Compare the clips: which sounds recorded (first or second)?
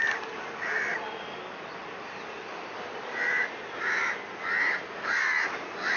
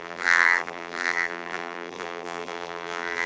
first